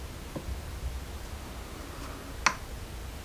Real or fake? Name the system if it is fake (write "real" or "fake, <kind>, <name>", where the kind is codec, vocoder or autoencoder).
real